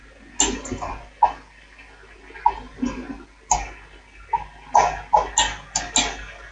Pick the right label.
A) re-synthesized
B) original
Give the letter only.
B